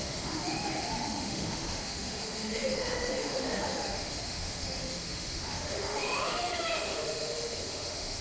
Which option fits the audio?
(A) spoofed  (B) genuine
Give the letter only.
A